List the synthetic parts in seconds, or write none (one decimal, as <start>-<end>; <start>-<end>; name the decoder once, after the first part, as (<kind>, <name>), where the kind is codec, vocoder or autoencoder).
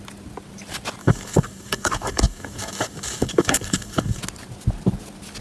1.0-4.2 (codec, DAC)